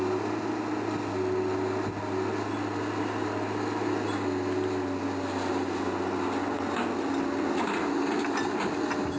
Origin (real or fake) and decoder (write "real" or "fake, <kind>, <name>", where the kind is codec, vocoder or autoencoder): real